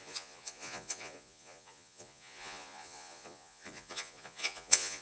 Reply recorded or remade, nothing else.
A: remade